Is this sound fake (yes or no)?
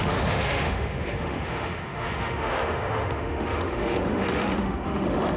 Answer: yes